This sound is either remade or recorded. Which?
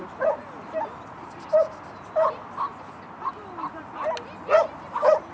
recorded